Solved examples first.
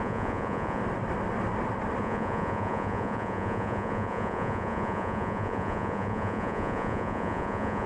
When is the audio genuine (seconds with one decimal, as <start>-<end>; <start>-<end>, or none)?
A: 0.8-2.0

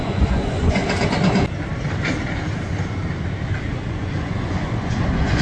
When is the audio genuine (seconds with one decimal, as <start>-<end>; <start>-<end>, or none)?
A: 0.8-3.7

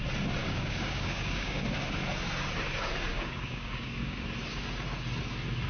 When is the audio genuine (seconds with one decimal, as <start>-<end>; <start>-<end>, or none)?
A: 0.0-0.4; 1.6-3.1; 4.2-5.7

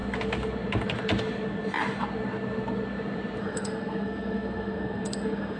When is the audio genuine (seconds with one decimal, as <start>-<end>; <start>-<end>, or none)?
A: 0.0-3.4

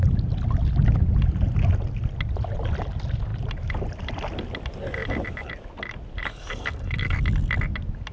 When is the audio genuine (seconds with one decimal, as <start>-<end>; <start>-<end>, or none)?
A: 0.0-6.3; 7.2-8.1

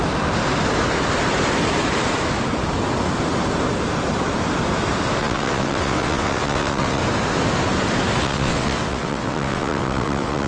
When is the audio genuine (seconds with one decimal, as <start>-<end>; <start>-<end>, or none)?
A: 0.0-5.2; 7.0-8.2

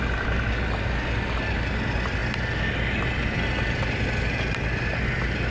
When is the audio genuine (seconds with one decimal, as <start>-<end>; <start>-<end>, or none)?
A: 0.0-5.5